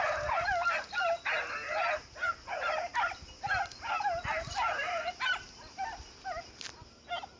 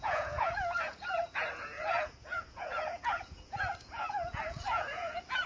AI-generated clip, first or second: second